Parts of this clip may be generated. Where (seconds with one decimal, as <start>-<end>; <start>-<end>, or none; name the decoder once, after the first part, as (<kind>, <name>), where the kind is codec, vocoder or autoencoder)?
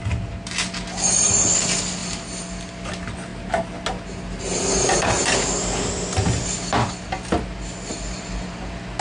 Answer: none